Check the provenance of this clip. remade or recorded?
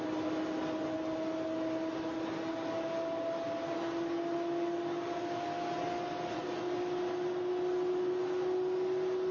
recorded